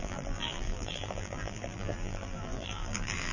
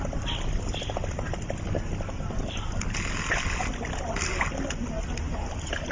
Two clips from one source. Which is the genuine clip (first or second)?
second